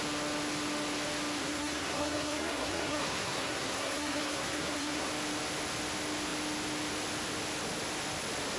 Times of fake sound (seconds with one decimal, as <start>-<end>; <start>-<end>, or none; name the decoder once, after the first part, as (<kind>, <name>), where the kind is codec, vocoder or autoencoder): 1.4-5.1 (codec, SNAC)